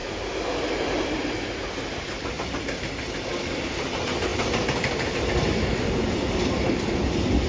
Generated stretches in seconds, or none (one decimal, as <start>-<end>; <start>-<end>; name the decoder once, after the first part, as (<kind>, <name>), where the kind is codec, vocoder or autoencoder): none